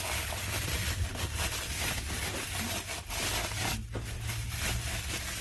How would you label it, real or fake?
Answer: real